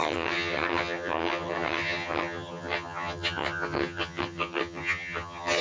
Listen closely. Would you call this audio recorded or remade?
remade